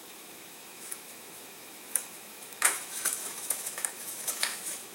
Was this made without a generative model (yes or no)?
no